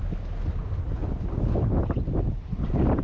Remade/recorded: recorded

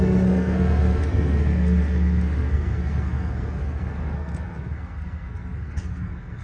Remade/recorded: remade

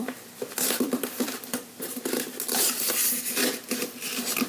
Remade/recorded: recorded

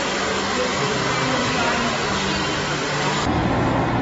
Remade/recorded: recorded